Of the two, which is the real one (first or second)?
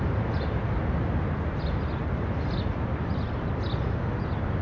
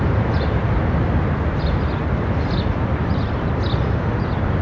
first